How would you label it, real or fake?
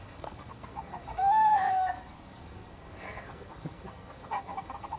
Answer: fake